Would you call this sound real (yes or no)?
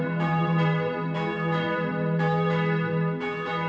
no